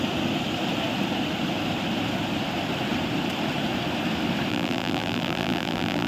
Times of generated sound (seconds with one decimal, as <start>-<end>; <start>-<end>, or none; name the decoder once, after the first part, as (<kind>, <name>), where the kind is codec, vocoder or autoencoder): 4.5-6.1 (vocoder, BigVGAN v2)